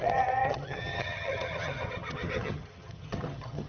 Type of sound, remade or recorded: remade